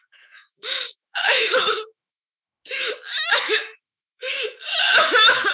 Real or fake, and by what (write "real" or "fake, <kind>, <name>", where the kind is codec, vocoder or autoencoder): fake, autoencoder, DAC-VAE